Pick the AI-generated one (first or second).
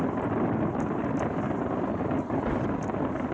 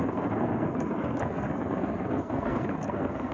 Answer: second